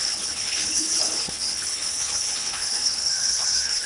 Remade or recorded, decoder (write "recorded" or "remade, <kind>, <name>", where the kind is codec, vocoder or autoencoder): remade, codec, HILCodec